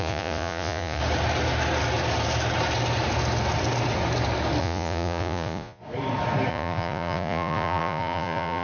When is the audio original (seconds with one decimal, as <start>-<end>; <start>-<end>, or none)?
1.0-4.6; 5.8-6.5

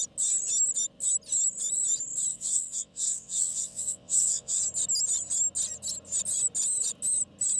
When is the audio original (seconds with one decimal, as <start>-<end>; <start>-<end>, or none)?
0.0-2.3; 4.6-7.6

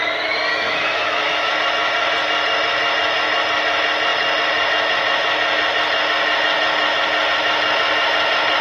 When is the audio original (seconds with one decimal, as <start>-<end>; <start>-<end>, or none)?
0.0-0.5; 1.5-8.6

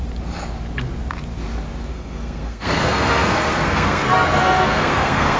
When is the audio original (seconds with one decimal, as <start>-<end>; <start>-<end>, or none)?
0.0-1.9